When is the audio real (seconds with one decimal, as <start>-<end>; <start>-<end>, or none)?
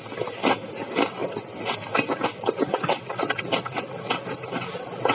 0.0-5.1